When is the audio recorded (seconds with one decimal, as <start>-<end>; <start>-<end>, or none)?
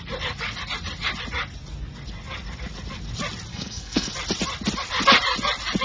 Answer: 0.0-3.5; 4.1-5.8